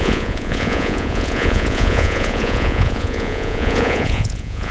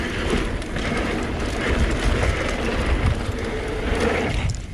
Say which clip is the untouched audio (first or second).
second